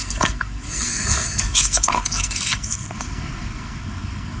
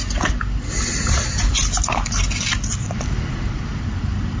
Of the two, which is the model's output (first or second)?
first